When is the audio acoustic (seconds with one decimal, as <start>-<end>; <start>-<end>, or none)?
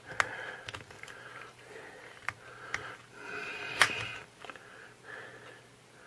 0.0-1.3; 2.2-6.1